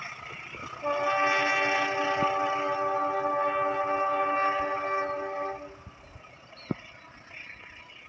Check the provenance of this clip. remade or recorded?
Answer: recorded